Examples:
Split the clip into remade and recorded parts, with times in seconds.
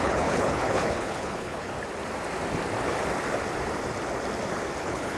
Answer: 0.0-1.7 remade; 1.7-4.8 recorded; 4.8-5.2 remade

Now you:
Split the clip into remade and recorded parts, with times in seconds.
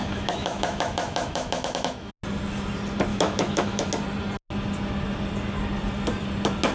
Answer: 0.0-2.1 remade; 2.1-3.1 recorded; 3.1-3.9 remade; 3.9-6.7 recorded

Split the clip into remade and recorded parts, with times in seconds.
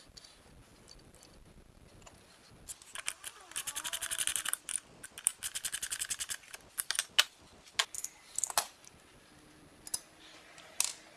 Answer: 0.0-11.2 recorded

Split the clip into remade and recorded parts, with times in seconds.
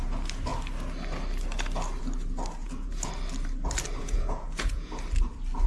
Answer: 0.0-2.6 recorded; 2.6-3.1 remade; 3.1-4.0 recorded; 4.0-4.9 remade; 4.9-5.7 recorded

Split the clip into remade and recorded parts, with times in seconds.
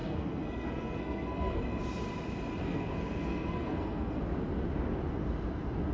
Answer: 0.0-1.6 remade; 1.6-2.6 recorded; 2.6-4.2 remade; 4.2-5.9 recorded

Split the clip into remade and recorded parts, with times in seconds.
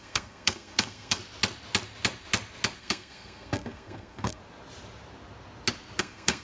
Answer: 0.0-1.2 remade; 1.2-2.8 recorded; 2.8-4.4 remade; 4.4-6.0 recorded; 6.0-6.4 remade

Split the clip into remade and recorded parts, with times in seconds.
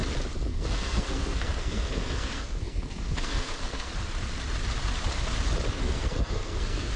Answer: 0.0-0.5 recorded; 0.5-3.9 remade; 3.9-5.7 recorded; 5.7-7.0 remade